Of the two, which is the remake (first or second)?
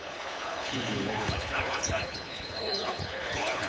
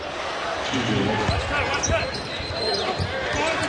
first